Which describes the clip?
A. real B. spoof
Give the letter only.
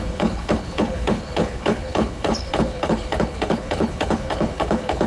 B